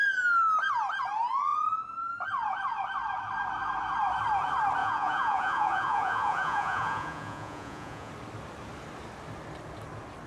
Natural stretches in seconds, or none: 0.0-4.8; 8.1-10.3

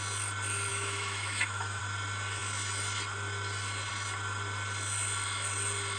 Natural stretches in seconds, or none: 0.0-0.7; 1.8-6.0

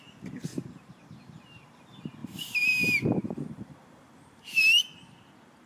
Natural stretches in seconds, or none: 0.0-0.5; 1.8-2.2; 4.8-5.7

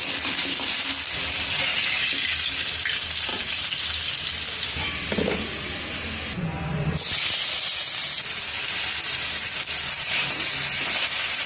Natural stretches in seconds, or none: 0.0-3.3; 7.1-11.5